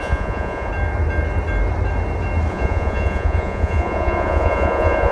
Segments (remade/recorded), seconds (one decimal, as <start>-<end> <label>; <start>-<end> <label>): 0.0-0.7 remade; 0.7-2.5 recorded; 2.5-5.1 remade